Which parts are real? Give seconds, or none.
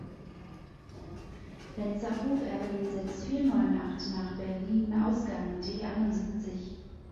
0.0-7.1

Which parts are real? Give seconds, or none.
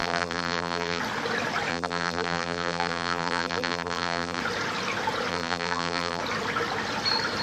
1.0-1.7; 4.4-5.3; 6.2-7.4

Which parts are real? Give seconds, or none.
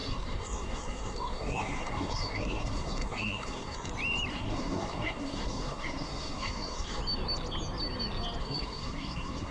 3.9-4.3; 7.0-8.4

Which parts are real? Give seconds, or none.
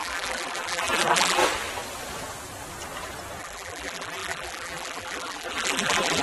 1.4-3.4